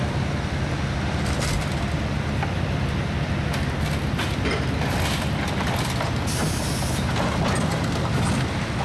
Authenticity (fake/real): real